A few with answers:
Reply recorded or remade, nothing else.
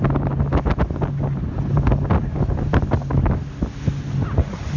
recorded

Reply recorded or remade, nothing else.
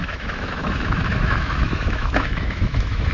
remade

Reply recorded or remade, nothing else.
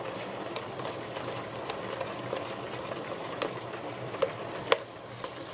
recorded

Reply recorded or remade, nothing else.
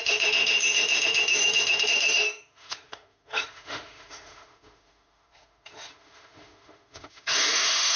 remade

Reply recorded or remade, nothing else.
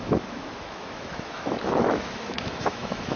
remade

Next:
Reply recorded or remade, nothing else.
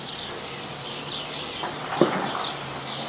recorded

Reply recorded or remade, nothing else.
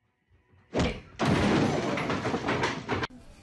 recorded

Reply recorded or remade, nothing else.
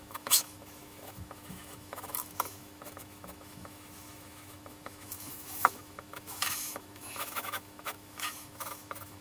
remade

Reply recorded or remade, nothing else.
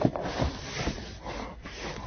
recorded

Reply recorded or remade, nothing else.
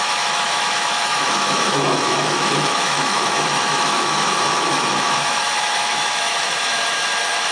remade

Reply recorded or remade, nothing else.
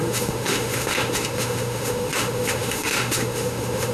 remade